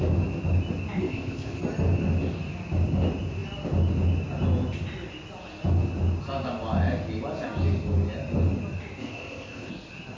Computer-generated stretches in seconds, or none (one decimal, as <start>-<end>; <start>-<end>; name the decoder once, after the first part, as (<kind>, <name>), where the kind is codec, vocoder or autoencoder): 1.0-1.6 (codec, ZipCodec); 9.0-9.7